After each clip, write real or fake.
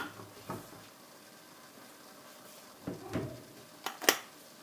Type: real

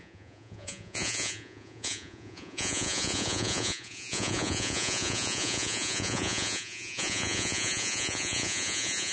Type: fake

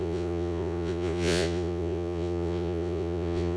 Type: fake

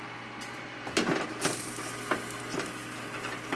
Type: real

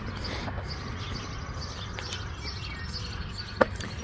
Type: real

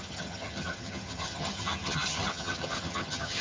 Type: fake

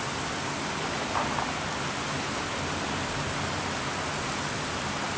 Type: real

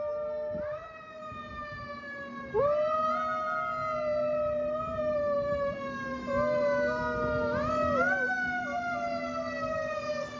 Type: real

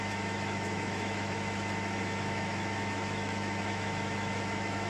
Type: fake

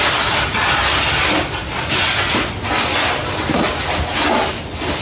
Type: real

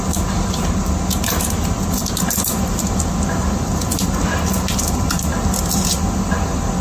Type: real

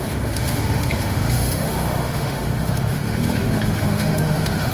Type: fake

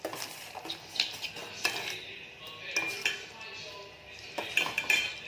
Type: real